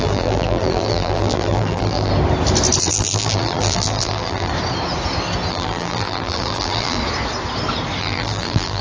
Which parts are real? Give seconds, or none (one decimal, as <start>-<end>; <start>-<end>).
2.1-2.8; 4.5-5.5; 7.0-8.0